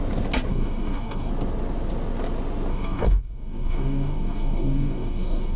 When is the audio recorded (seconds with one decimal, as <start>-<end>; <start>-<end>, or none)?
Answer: 0.0-0.5; 1.3-2.7

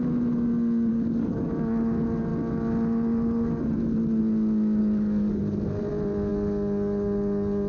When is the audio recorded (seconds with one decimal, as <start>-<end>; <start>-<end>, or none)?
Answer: 0.0-0.9; 1.5-4.8; 5.4-6.3

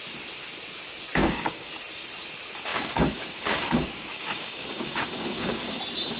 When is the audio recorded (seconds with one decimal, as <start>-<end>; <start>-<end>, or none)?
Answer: 0.0-1.2; 1.7-2.7; 5.8-6.2

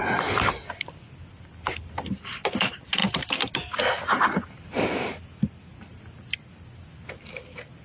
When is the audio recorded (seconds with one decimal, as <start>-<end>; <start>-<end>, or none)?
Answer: 0.0-7.8

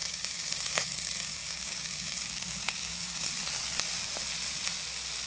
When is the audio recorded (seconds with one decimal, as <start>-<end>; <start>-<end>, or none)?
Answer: 3.3-5.3

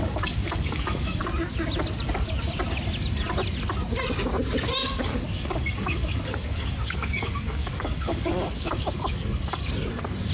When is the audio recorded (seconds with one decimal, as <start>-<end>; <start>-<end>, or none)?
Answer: 1.2-4.8; 9.7-10.3

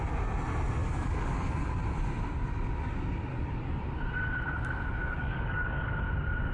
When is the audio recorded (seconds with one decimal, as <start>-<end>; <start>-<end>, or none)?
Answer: 0.0-0.8; 1.8-3.3; 3.8-5.0; 5.8-6.5

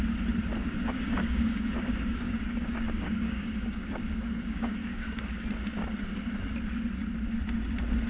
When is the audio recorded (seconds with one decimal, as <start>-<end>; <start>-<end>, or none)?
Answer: 0.0-0.6; 5.3-8.1